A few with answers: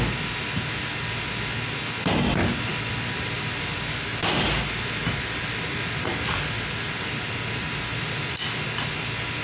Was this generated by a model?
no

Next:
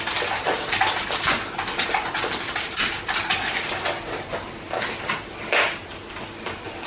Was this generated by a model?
no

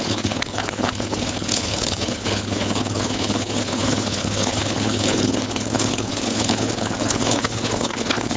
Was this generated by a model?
yes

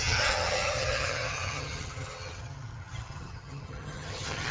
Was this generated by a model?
yes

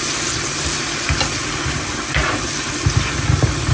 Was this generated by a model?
no